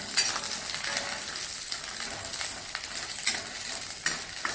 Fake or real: real